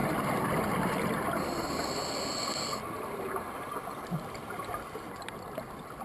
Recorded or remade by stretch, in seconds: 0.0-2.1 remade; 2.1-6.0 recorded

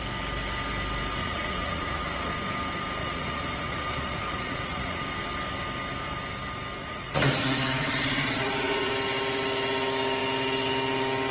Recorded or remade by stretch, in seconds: 0.0-1.2 recorded; 1.2-2.3 remade; 2.3-3.0 recorded; 3.0-5.0 remade; 5.0-6.8 recorded; 6.8-8.9 remade; 8.9-11.3 recorded

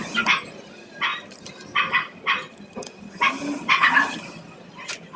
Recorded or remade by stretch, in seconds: 0.0-5.2 recorded